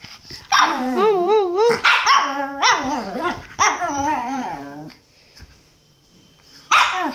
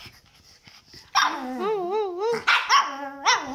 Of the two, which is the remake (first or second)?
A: first